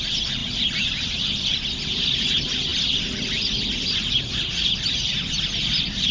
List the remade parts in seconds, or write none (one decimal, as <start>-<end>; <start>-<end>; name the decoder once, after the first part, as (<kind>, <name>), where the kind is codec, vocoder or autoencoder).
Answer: none